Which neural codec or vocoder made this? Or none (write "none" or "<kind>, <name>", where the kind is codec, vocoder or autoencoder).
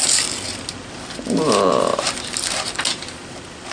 none